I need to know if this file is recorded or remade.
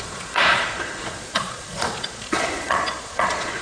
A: remade